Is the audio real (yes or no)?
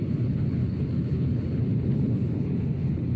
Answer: no